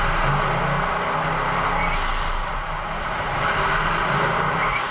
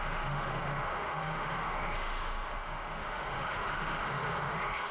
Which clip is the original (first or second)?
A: first